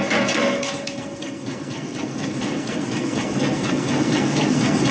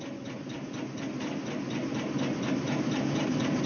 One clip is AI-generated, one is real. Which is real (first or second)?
second